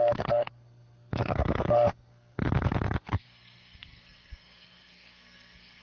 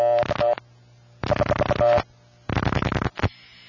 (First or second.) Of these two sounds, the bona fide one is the second